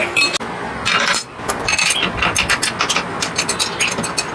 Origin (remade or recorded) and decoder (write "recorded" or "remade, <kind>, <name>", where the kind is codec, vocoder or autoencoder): recorded